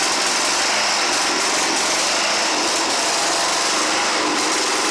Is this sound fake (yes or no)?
no